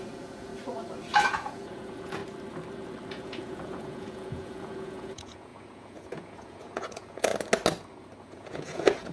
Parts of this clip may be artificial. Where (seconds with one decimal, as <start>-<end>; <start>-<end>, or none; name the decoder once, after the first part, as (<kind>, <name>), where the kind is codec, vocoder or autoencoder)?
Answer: 0.0-0.5 (vocoder, Vocos); 1.2-2.2; 3.1-7.3; 8.2-9.1